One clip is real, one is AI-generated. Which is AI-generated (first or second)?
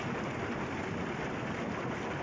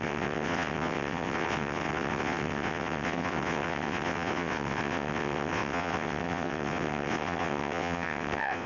second